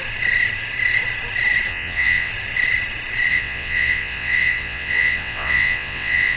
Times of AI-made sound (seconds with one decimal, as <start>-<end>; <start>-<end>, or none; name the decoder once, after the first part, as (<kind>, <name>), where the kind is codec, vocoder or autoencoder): 1.7-2.3 (vocoder, WaveNeXt); 3.3-6.4